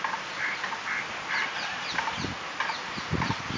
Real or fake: real